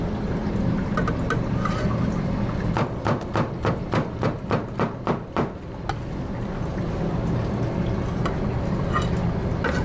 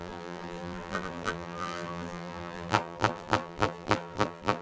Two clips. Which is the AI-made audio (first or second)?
second